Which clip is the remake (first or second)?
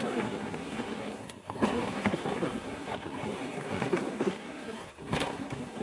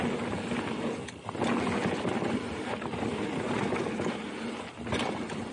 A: first